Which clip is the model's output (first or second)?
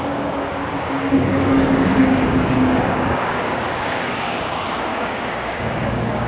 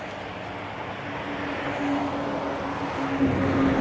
first